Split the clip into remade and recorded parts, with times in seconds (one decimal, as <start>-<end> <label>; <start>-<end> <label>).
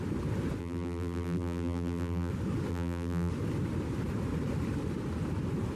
0.0-0.6 recorded; 0.6-2.3 remade; 2.3-2.7 recorded; 2.7-3.3 remade; 3.3-5.8 recorded